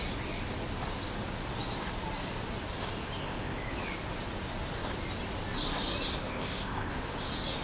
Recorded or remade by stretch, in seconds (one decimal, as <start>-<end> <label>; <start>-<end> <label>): 0.0-3.2 recorded; 3.2-3.7 remade; 3.7-6.2 recorded; 6.2-6.9 remade; 6.9-7.6 recorded